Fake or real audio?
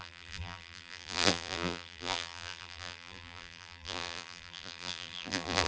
fake